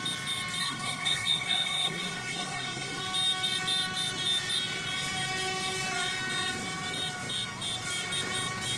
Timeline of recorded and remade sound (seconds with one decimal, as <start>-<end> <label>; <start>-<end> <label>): 0.0-0.6 recorded; 0.6-3.0 remade; 3.0-8.8 recorded